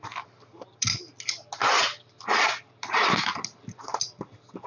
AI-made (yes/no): no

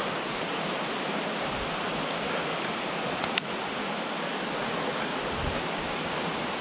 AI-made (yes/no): no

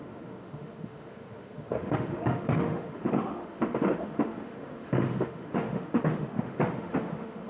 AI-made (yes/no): yes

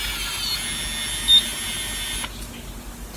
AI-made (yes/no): no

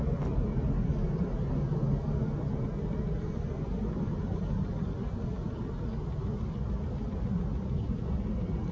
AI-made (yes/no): no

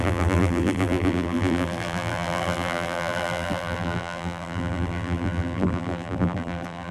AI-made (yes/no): yes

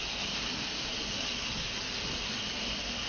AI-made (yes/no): no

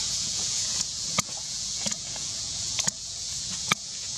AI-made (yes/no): yes